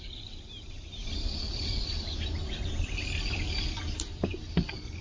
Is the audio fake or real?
real